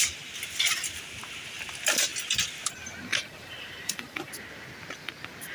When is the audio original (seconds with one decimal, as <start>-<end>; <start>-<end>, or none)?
0.0-3.1; 4.3-5.5